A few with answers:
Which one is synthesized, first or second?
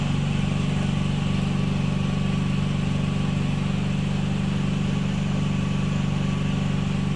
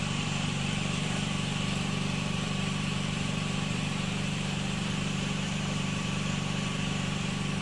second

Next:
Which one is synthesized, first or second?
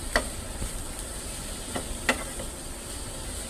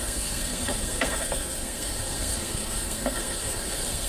second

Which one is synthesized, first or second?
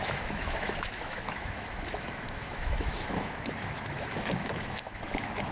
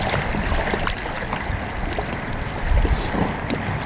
first